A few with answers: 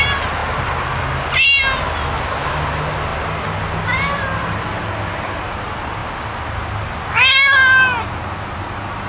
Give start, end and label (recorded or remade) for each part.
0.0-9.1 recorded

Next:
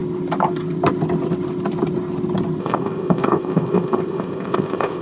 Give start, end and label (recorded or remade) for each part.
0.0-2.6 recorded; 2.6-5.0 remade

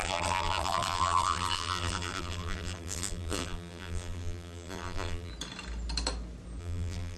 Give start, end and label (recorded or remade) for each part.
0.0-5.3 remade; 5.3-6.6 recorded; 6.6-7.2 remade

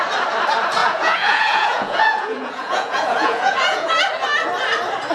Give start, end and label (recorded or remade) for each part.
0.0-0.8 recorded; 0.8-3.9 remade; 3.9-5.1 recorded